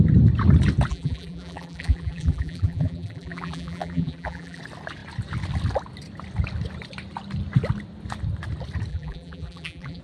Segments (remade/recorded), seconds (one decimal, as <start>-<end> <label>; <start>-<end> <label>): 0.0-0.9 recorded; 0.9-4.6 remade; 4.6-8.9 recorded; 8.9-10.0 remade